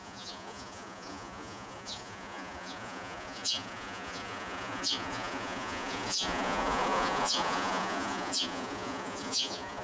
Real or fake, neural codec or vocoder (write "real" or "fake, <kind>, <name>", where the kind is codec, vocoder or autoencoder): fake, vocoder, Vocos